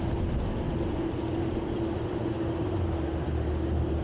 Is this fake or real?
real